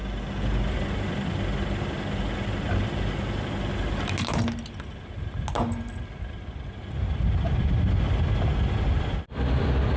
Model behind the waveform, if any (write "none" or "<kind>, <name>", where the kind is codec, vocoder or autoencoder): none